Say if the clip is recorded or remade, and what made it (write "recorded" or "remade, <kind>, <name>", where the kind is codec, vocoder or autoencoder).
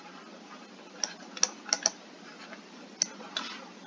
recorded